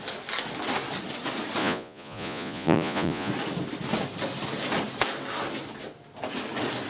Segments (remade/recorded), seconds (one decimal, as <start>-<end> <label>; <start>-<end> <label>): 0.0-1.6 recorded; 1.6-3.3 remade; 3.3-6.9 recorded